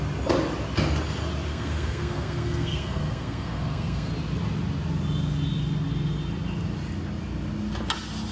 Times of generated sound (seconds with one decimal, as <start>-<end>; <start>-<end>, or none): 1.5-4.1